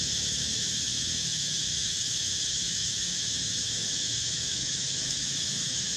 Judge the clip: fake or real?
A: fake